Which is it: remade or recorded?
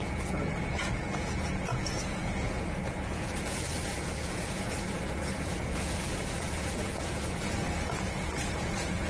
remade